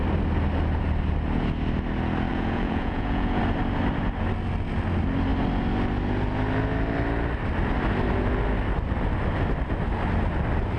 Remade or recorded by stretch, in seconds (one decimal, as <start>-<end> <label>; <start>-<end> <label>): 0.0-2.3 recorded; 2.3-3.4 remade; 3.4-10.8 recorded